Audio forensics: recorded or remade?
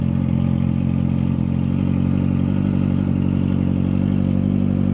recorded